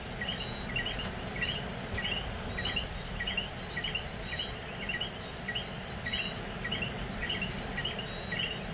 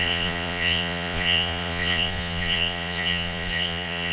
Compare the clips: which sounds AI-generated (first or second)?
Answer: second